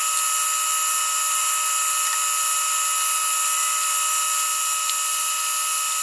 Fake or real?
real